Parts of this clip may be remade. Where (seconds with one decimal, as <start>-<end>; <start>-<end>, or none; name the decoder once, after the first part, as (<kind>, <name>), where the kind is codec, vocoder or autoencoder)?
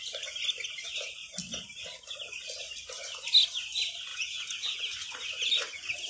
4.1-4.8 (vocoder, Vocos)